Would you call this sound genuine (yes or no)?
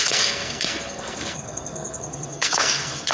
no